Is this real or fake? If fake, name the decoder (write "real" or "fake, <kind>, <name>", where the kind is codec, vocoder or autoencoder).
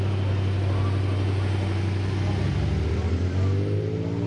real